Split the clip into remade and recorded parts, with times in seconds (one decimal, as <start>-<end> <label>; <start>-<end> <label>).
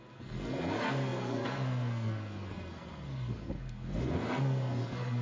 0.0-5.2 remade